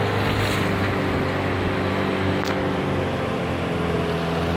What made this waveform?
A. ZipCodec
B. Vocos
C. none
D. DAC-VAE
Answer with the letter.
C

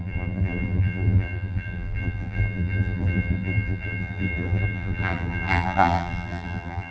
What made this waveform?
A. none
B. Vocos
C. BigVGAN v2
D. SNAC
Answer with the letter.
C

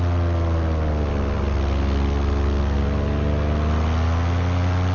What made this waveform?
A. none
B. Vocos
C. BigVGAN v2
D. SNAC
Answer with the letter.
A